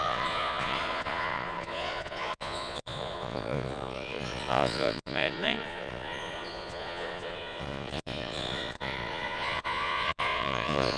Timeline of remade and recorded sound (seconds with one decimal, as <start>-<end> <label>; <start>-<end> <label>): 0.0-11.0 remade